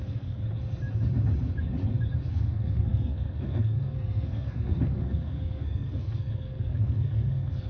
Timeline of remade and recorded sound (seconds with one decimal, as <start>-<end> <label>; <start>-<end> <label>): 0.0-0.4 remade; 0.4-2.3 recorded; 2.3-7.7 remade